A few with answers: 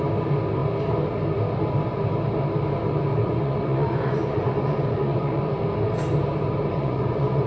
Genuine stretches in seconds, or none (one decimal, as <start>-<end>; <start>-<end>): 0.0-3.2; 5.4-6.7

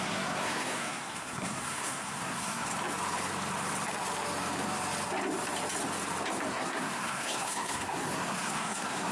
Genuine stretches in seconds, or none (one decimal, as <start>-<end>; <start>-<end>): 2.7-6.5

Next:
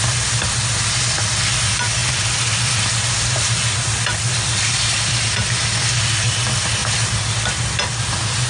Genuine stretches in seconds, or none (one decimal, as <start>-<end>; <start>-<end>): 0.0-8.5